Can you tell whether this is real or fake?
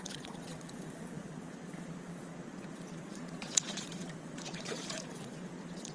fake